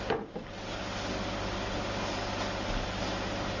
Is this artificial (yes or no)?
no